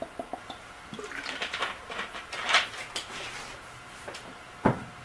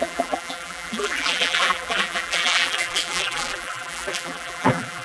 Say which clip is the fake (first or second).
second